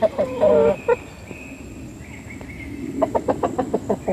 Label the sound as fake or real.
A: real